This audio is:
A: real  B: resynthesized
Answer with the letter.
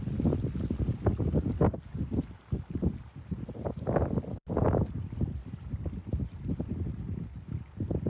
A